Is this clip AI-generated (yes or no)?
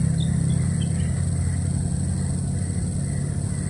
no